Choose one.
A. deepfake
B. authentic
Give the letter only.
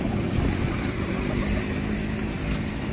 B